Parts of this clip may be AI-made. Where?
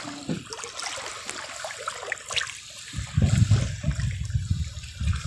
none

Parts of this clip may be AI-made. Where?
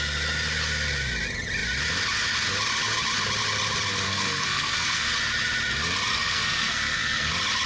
4.1-5.1 (codec, SNAC); 6.1-7.3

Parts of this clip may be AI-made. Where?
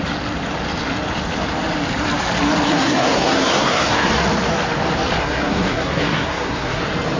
2.7-4.1 (codec, SNAC); 5.2-6.8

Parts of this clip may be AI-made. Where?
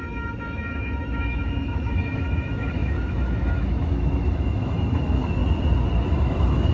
0.0-5.4 (autoencoder, DAC-VAE); 6.1-6.7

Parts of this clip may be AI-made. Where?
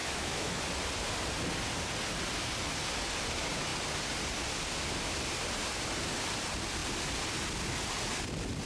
0.0-0.6 (autoencoder, DAC-VAE)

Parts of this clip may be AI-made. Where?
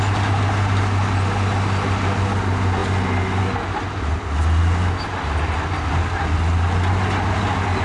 none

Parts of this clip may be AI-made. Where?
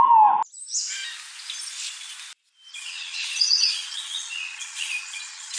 2.7-5.6 (vocoder, Vocos)